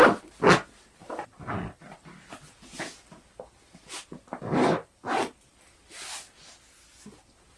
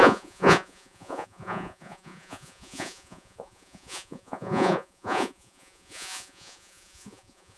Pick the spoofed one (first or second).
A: second